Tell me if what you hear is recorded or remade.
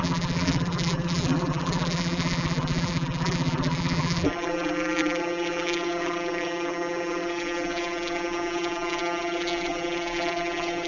remade